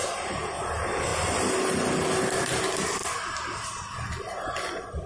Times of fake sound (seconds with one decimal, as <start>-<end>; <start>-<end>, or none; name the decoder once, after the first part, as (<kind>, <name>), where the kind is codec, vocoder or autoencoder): none